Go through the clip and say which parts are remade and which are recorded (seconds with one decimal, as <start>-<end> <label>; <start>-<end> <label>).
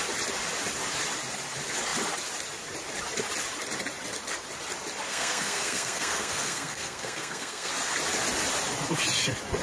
0.0-5.1 recorded; 5.1-7.7 remade; 7.7-9.6 recorded